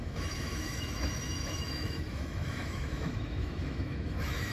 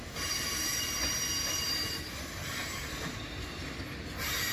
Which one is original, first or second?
second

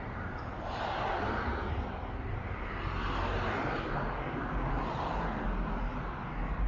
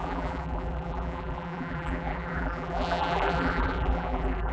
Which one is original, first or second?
first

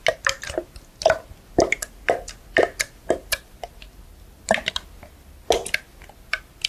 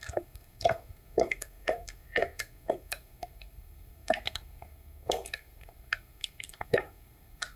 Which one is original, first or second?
first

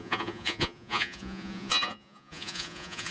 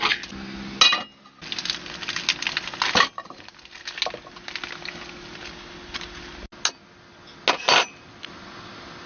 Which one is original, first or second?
second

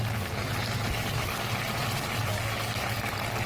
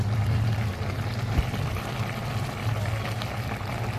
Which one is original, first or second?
first